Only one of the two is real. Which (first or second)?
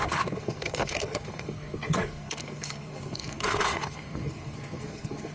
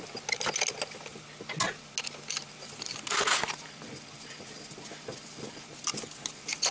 second